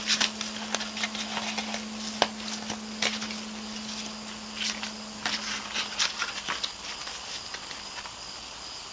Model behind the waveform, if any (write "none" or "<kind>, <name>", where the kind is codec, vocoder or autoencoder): none